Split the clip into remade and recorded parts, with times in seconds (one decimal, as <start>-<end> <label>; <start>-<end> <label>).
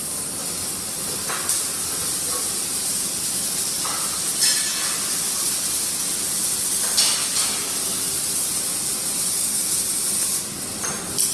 0.0-11.3 recorded